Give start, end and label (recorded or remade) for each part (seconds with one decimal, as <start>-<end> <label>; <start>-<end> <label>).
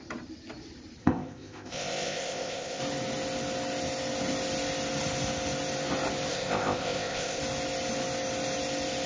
0.0-1.0 recorded; 1.0-2.8 remade; 2.8-6.3 recorded; 6.3-7.4 remade; 7.4-9.1 recorded